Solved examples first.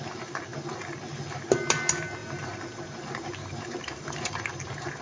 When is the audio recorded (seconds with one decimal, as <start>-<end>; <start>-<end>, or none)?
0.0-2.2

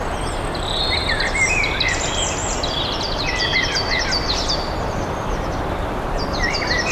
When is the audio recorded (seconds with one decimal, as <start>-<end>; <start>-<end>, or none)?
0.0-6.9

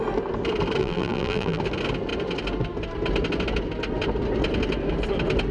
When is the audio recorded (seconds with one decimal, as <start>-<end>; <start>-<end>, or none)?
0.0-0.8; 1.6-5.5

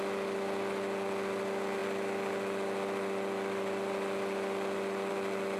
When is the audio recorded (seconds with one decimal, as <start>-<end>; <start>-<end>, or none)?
0.0-5.6